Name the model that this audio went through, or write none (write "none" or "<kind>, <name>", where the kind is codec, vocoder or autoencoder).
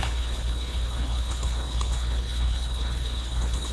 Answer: codec, HILCodec